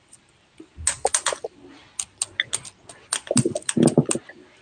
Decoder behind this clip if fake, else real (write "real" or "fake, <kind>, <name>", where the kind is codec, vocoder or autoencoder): real